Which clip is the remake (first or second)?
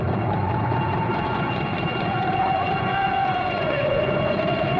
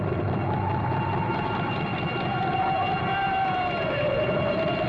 first